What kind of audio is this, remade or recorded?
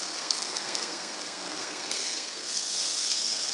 remade